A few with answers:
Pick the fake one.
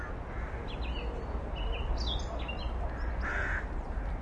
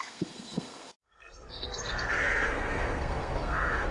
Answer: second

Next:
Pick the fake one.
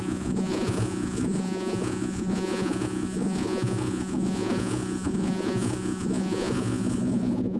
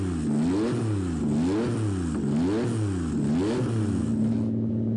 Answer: first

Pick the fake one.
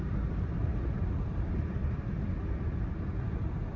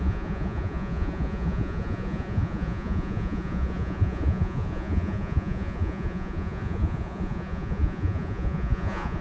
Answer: second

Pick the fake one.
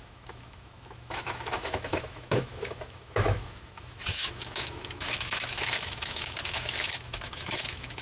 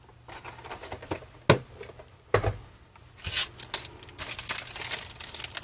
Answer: first